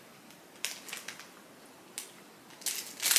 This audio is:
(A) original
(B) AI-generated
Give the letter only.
A